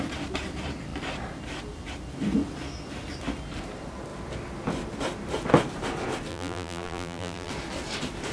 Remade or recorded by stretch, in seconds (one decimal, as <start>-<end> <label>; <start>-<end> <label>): 0.0-6.3 recorded; 6.3-7.5 remade; 7.5-8.3 recorded